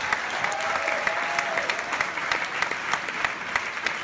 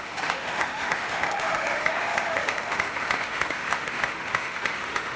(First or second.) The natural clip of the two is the first